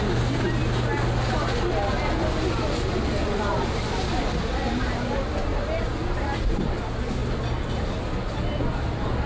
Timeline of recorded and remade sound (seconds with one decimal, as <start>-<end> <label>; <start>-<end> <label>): 0.0-9.3 recorded